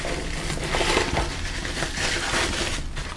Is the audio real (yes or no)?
yes